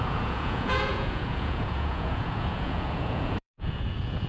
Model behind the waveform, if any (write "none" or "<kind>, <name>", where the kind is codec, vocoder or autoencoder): vocoder, Vocos